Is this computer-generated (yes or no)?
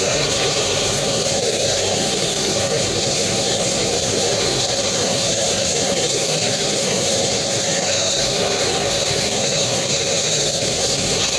yes